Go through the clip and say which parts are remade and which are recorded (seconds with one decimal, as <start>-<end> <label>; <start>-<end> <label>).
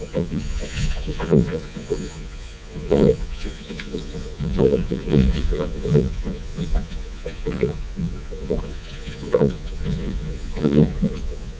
0.0-11.6 remade